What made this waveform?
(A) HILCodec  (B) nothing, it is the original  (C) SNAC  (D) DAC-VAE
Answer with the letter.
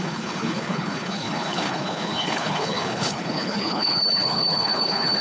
A